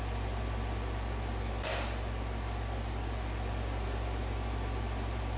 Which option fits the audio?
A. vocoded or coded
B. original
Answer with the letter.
B